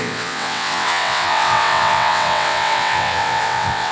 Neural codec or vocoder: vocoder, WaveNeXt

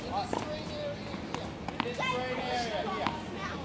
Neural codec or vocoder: none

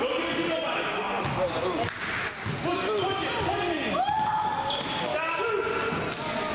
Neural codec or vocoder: none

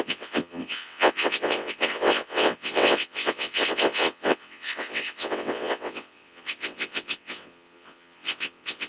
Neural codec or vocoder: vocoder, WaveNeXt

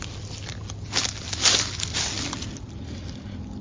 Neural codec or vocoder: none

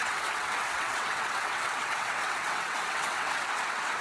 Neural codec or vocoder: vocoder, WaveNeXt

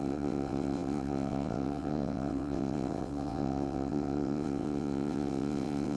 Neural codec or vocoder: vocoder, WaveNeXt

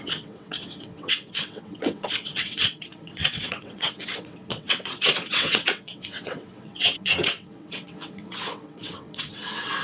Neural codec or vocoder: vocoder, WaveNeXt